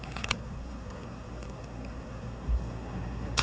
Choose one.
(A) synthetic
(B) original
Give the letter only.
A